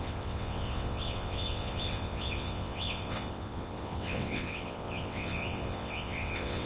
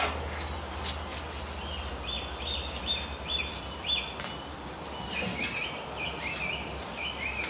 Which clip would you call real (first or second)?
second